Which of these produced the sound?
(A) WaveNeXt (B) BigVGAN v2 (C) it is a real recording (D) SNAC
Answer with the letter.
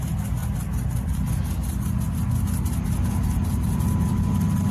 C